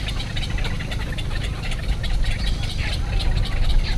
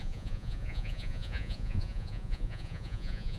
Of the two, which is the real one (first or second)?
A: first